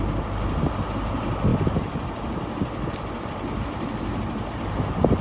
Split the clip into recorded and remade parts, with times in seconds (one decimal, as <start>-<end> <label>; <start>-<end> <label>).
0.0-5.2 recorded